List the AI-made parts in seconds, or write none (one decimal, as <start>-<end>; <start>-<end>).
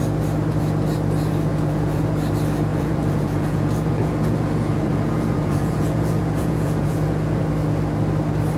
1.5-2.0; 2.7-7.4